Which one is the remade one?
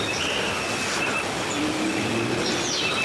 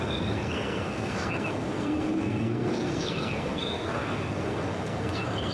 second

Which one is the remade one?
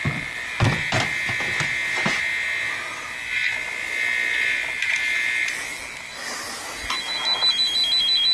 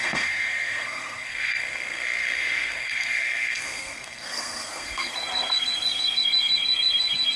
second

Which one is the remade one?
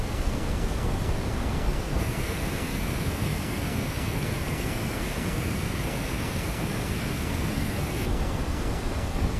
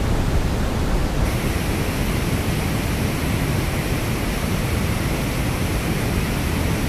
first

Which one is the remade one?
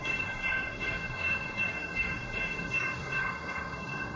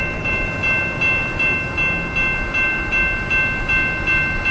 first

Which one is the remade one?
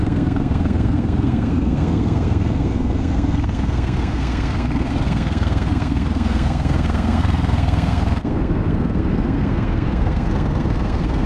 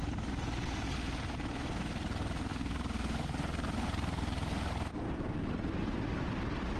first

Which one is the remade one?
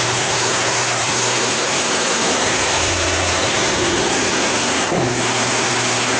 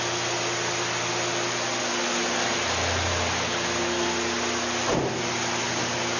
first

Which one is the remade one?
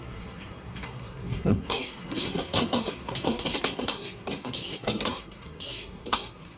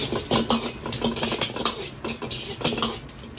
first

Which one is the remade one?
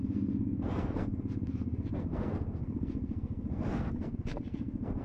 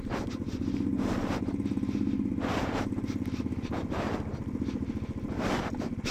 first